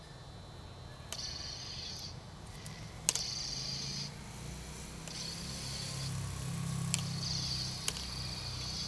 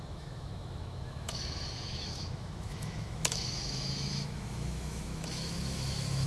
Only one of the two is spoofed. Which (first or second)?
second